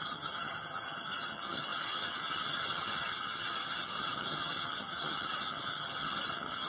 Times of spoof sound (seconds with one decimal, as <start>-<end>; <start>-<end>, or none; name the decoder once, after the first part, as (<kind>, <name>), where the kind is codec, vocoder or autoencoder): 0.0-6.7 (vocoder, HiFi-GAN)

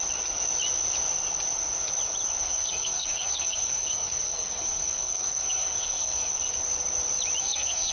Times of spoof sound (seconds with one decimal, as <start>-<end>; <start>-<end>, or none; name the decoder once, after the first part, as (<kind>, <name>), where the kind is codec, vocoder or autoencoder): 2.4-6.3 (codec, SNAC); 7.4-7.9

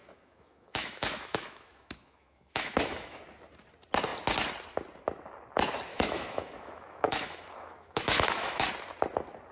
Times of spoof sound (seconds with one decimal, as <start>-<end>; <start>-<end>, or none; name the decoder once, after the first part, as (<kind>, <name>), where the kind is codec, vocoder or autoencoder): 0.0-3.2 (autoencoder, DAC-VAE); 5.9-8.7

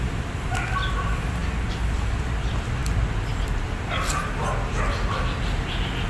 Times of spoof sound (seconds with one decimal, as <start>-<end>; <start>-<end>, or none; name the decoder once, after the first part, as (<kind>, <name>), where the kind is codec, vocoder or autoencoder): none